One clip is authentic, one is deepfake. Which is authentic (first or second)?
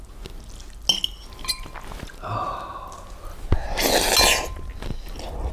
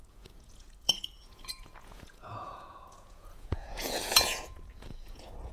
first